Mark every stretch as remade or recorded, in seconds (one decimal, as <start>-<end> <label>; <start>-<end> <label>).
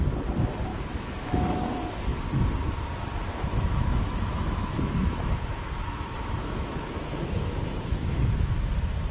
0.0-0.7 recorded; 0.7-1.7 remade; 1.7-3.5 recorded; 3.5-8.5 remade; 8.5-9.1 recorded